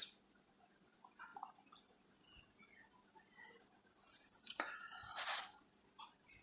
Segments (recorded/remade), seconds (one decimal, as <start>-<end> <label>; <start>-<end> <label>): 0.0-6.4 recorded